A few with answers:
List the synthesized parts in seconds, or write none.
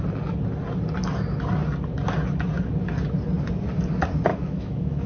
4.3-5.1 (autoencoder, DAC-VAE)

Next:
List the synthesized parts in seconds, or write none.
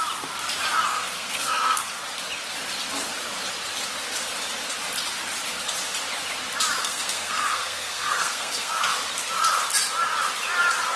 0.9-2.0 (codec, SNAC); 6.8-8.8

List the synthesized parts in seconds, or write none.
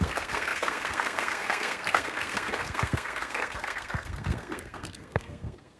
0.0-5.8 (codec, SNAC)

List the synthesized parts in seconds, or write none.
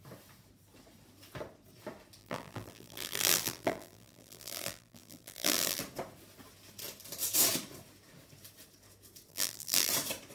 2.2-5.8 (vocoder, BigVGAN v2); 9.3-9.9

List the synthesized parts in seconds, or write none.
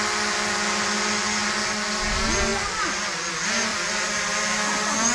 3.7-4.2 (vocoder, BigVGAN v2)